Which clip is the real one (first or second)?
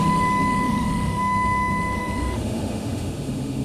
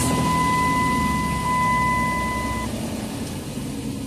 second